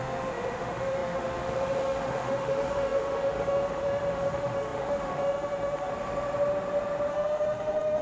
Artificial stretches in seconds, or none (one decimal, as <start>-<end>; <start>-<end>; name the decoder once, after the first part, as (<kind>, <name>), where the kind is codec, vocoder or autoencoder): 0.0-5.9 (autoencoder, DAC-VAE); 7.1-8.0

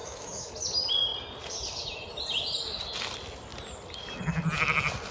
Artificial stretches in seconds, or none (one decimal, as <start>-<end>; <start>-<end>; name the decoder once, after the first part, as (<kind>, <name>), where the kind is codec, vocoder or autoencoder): 0.0-0.5 (autoencoder, DAC-VAE)

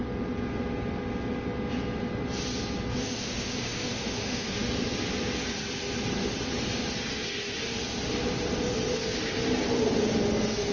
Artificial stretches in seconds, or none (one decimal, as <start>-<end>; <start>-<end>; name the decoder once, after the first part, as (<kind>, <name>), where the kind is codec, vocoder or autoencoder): 2.9-4.7 (autoencoder, DAC-VAE)